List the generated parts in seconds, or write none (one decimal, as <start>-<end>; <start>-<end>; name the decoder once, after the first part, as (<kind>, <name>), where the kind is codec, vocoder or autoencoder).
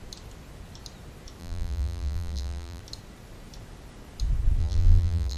1.4-2.8 (vocoder, BigVGAN v2); 4.6-5.4